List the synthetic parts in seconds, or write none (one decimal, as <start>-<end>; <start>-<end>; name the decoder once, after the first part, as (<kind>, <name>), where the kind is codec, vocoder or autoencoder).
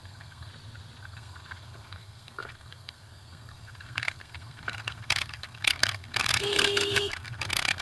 0.0-0.5 (codec, SNAC); 1.0-7.8